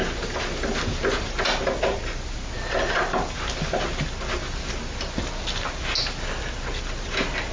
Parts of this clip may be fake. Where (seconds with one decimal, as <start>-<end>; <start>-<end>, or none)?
none